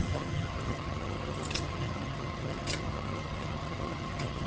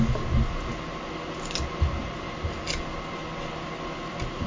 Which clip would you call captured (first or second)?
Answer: second